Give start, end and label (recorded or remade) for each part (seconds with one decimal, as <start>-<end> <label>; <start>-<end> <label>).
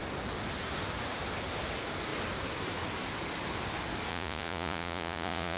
0.0-4.1 recorded; 4.1-5.6 remade